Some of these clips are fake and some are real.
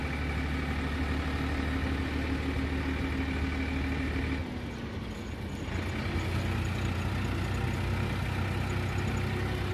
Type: real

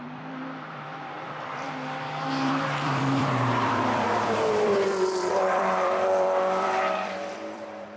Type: fake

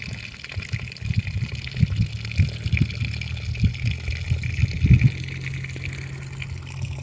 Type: real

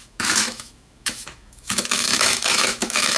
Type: fake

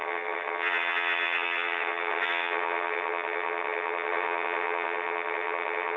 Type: fake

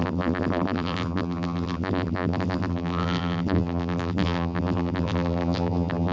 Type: fake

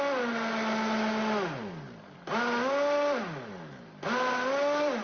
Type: real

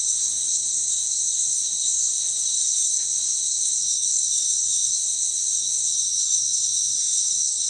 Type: fake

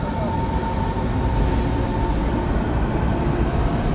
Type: real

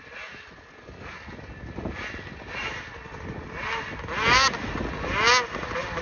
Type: real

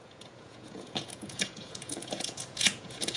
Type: fake